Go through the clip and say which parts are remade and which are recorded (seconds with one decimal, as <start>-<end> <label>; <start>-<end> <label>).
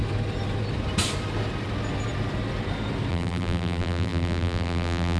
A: 0.0-3.1 recorded; 3.1-5.2 remade